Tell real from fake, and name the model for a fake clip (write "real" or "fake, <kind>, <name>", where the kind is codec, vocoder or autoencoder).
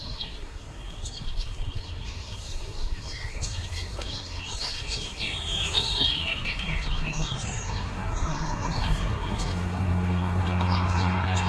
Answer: fake, codec, SNAC